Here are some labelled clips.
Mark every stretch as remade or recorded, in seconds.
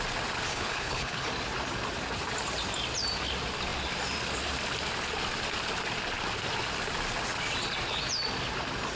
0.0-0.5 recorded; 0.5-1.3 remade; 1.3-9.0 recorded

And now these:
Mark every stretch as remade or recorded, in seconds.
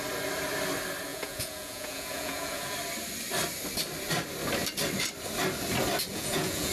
0.0-1.1 recorded; 1.1-2.7 remade; 2.7-6.1 recorded; 6.1-6.7 remade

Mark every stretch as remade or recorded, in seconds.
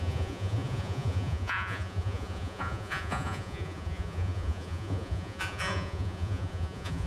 0.0-7.1 remade